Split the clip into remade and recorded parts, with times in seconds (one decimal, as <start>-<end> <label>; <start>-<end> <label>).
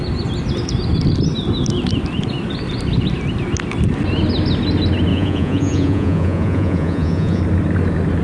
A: 0.0-5.1 recorded; 5.1-7.4 remade; 7.4-8.2 recorded